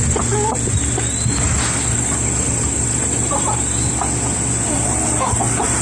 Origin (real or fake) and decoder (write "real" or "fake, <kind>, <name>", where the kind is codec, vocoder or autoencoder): real